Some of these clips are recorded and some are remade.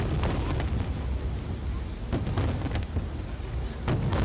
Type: recorded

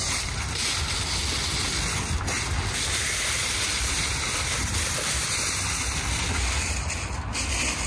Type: recorded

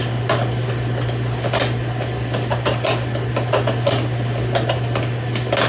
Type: recorded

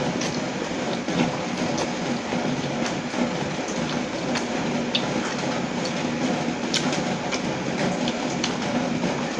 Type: recorded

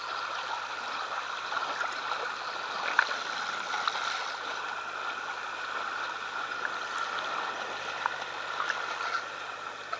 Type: recorded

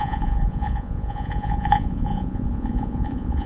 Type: remade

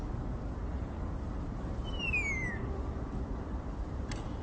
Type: recorded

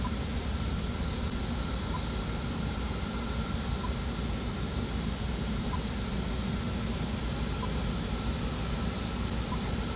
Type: recorded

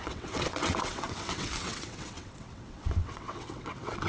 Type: remade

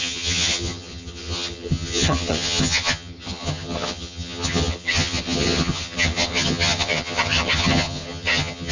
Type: remade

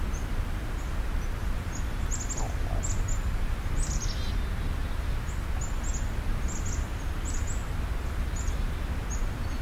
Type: recorded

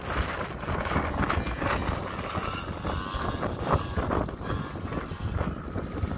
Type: recorded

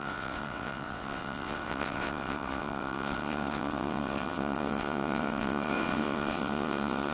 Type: remade